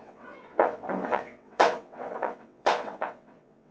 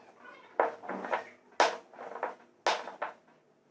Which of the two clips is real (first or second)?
second